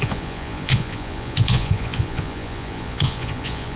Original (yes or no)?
no